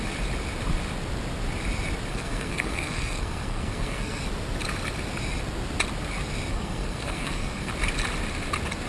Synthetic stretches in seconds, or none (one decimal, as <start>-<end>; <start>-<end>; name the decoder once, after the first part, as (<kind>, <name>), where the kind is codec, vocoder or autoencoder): 2.1-4.2 (codec, SNAC); 6.5-7.7